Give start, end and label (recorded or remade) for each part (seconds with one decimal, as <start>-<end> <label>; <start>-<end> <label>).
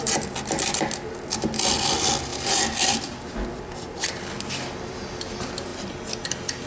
0.0-6.7 recorded